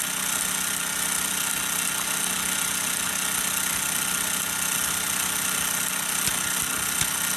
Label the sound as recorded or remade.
recorded